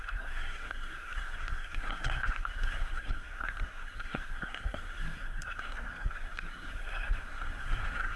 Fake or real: fake